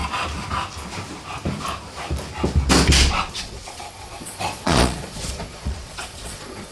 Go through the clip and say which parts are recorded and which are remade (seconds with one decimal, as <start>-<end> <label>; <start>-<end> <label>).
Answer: 0.0-3.3 recorded; 3.3-6.7 remade